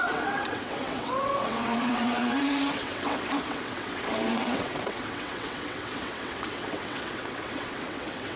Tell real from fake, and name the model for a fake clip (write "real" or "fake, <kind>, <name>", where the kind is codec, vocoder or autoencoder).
fake, vocoder, WaveNeXt